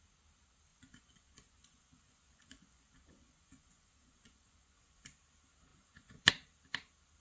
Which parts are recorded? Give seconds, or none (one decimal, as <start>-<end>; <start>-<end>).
0.0-0.7; 5.0-5.7; 6.3-7.2